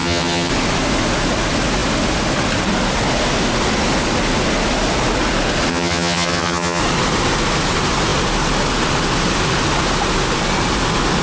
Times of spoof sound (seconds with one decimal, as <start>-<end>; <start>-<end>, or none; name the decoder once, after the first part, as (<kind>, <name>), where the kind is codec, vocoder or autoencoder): 0.0-0.5 (vocoder, HiFi-GAN); 5.7-6.8